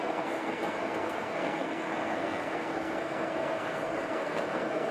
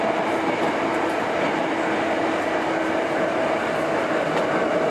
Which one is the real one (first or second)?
second